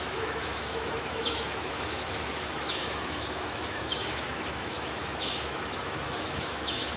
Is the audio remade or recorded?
remade